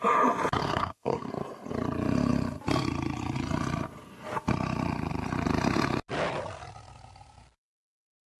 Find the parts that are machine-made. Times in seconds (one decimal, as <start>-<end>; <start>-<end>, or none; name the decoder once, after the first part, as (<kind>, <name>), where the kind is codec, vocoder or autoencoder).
0.6-1.3 (codec, SNAC)